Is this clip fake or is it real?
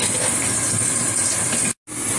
real